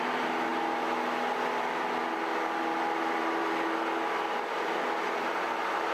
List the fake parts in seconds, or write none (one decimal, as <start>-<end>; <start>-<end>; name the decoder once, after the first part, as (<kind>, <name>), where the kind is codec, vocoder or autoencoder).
none